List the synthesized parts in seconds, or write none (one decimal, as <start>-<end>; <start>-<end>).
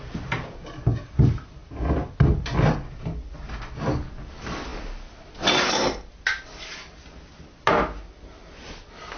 none